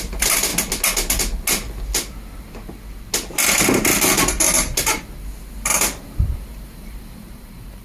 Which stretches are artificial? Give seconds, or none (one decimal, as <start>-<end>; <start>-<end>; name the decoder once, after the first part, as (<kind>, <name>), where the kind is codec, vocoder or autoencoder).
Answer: 0.0-0.5 (vocoder, BigVGAN v2); 5.2-7.8